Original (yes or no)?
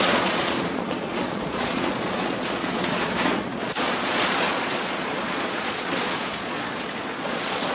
no